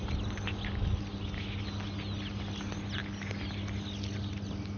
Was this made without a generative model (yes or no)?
yes